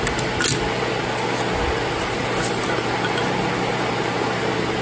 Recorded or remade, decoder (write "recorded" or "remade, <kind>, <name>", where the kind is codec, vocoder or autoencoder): recorded